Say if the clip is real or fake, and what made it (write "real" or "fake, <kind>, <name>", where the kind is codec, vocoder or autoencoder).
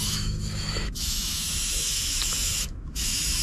fake, autoencoder, DAC-VAE